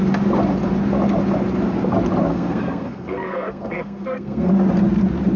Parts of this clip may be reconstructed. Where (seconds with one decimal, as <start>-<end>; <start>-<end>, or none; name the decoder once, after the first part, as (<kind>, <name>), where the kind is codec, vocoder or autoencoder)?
2.3-4.5 (codec, SNAC)